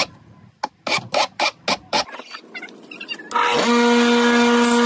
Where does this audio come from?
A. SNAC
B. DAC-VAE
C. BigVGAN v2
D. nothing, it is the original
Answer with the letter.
D